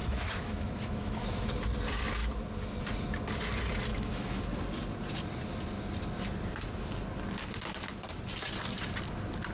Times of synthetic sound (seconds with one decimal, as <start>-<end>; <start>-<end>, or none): 0.0-1.5; 3.9-4.4

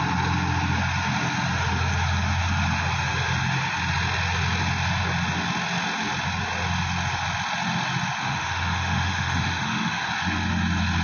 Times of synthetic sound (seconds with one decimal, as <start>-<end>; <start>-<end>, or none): 8.2-10.1

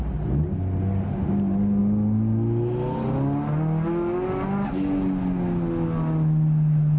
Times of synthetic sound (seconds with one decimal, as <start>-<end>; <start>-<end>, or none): none

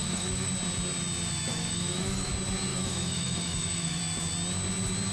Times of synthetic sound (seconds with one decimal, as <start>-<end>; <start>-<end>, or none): 0.0-0.5; 1.5-2.3; 2.7-4.0

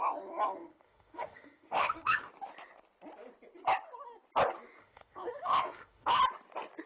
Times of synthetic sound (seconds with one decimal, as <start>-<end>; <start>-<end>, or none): 0.7-2.3; 4.8-6.2

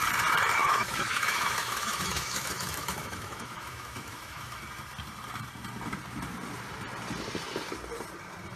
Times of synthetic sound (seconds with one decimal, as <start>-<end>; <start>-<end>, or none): 0.6-4.6

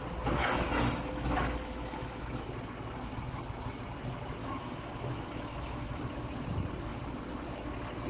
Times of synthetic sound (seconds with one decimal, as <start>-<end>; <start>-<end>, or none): 0.4-2.4; 4.4-6.0